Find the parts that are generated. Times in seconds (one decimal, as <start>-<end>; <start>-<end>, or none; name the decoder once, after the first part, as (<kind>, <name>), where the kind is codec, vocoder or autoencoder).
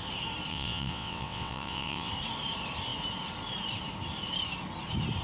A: 0.5-2.1 (vocoder, WaveNeXt)